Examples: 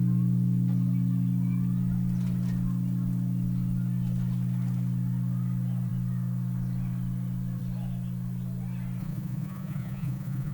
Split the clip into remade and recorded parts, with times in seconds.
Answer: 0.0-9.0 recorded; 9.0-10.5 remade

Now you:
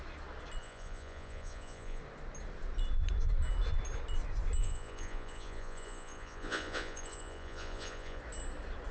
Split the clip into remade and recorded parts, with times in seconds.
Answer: 0.0-0.6 recorded; 0.6-2.0 remade; 2.0-4.6 recorded; 4.6-8.2 remade; 8.2-8.9 recorded